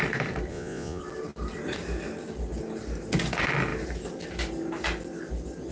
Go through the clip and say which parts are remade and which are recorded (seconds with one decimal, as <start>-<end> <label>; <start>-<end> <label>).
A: 0.0-0.5 recorded; 0.5-1.0 remade; 1.0-5.7 recorded